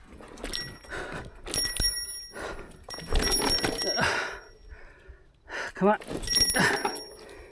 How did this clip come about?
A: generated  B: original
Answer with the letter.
B